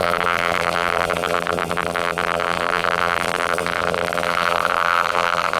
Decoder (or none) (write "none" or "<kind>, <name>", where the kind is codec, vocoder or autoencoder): vocoder, BigVGAN v2